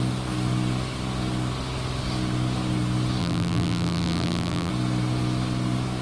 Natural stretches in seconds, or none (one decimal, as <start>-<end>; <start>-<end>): 0.0-3.2; 4.7-6.0